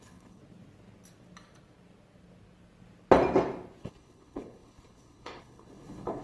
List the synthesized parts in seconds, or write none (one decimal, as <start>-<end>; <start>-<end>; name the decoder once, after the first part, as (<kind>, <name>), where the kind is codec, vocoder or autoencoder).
0.0-0.4 (codec, HILCodec); 3.8-6.2

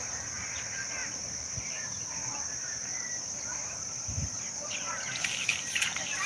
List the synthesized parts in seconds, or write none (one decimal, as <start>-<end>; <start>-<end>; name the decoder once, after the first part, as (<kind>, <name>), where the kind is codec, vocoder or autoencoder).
1.0-4.5 (vocoder, BigVGAN v2); 5.5-6.3

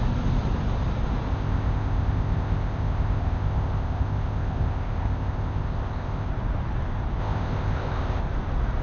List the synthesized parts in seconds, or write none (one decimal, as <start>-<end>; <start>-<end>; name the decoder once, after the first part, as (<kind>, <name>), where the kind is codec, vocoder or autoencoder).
1.3-6.3 (codec, ZipCodec); 7.2-8.2

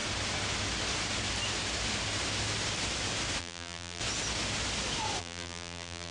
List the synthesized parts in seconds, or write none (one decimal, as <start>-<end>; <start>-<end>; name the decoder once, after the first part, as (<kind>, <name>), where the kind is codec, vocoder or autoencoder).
3.4-4.0 (vocoder, BigVGAN v2); 5.2-6.1

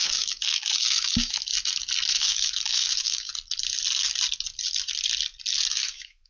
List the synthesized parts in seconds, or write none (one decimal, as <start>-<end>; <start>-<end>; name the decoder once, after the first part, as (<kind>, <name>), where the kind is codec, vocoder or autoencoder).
0.0-1.5 (autoencoder, DAC-VAE); 2.1-3.3; 5.7-6.3